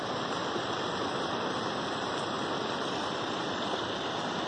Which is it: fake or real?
real